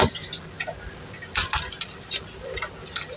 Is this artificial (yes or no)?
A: no